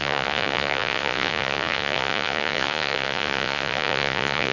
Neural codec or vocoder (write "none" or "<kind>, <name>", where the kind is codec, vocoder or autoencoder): vocoder, Vocos